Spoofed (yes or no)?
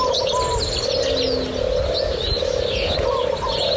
no